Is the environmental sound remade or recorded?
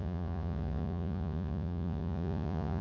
remade